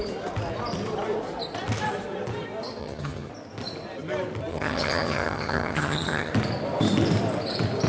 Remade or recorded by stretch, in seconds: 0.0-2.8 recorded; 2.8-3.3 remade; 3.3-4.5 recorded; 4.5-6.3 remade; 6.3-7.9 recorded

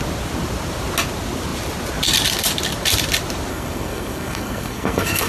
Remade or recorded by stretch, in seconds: 0.0-3.5 recorded; 3.5-5.3 remade

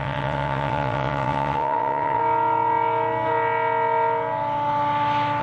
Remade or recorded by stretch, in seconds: 0.0-2.2 remade; 2.2-5.4 recorded

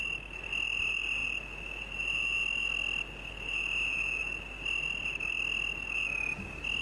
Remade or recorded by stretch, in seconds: 0.0-6.8 recorded